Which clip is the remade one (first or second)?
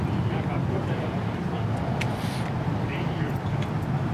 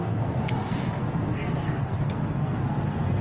second